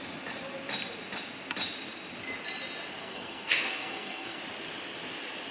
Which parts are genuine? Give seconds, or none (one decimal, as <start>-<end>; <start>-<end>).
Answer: 0.0-3.0; 4.4-5.5

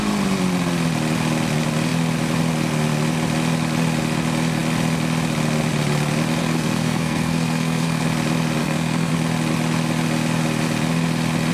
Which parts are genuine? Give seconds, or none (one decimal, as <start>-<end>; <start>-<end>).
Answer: 0.0-6.4; 8.0-8.6; 9.1-11.5

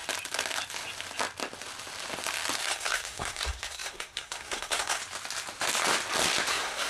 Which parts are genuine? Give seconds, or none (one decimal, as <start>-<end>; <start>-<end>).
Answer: 0.0-2.6; 5.0-6.5

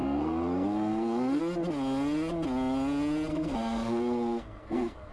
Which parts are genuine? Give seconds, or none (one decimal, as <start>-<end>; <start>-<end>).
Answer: 1.4-3.3

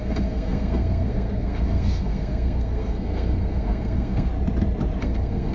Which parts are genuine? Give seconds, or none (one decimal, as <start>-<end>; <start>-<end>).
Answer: 4.3-5.0